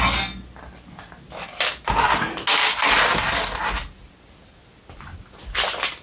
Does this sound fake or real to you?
real